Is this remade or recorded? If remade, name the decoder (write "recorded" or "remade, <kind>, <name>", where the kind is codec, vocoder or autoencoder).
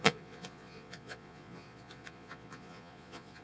remade, vocoder, Vocos